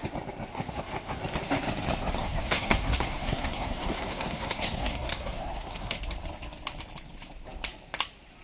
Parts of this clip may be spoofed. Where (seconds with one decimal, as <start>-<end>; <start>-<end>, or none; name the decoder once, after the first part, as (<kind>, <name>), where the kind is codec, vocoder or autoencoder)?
0.5-1.2 (codec, SNAC); 2.2-6.0